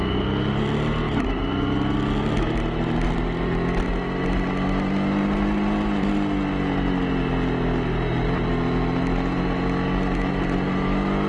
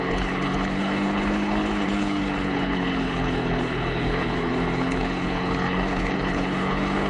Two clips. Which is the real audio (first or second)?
first